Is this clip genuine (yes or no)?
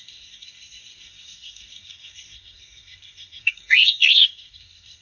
no